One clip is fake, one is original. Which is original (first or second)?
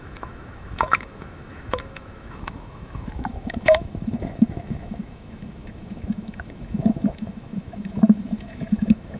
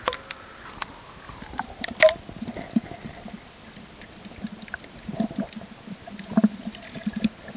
second